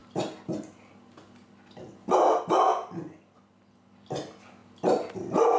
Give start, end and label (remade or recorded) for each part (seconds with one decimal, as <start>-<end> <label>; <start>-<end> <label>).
0.0-5.6 recorded